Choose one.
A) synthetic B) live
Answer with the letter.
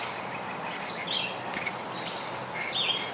B